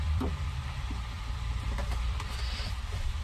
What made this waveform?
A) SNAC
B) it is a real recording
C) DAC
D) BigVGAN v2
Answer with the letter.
D